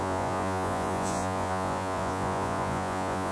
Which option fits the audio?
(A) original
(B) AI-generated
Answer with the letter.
B